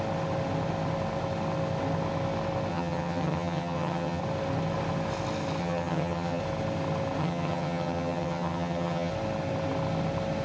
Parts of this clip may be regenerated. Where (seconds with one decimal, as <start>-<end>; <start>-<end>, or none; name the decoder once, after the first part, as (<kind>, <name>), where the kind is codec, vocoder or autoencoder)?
2.7-4.2 (vocoder, HiFi-GAN); 5.6-6.4; 7.2-9.1